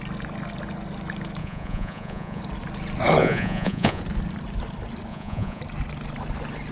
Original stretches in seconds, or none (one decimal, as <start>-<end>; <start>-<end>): 0.0-1.4; 2.4-3.2; 4.0-5.1; 5.6-6.7